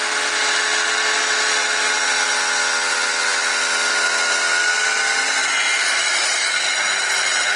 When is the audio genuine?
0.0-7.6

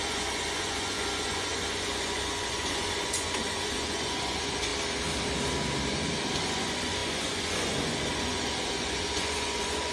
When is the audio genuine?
4.7-6.4

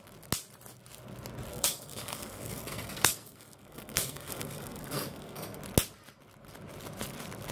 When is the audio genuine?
0.0-1.5; 5.6-7.5

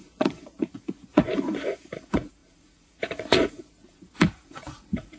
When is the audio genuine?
none